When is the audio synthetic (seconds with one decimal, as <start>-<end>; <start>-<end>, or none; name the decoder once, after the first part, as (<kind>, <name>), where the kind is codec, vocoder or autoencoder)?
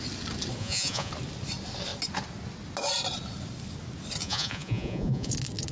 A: 0.6-1.1 (vocoder, Vocos); 4.2-5.3